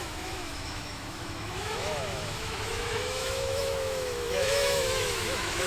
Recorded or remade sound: remade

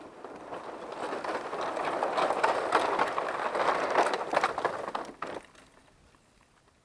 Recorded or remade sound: recorded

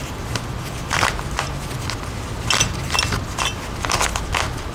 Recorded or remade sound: recorded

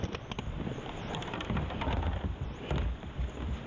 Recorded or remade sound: recorded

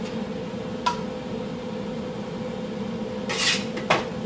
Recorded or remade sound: recorded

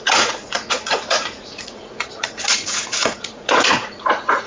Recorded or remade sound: remade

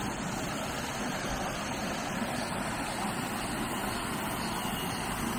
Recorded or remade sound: recorded